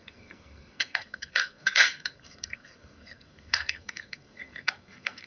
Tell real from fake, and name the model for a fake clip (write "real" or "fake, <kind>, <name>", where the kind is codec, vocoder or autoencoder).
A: fake, codec, SNAC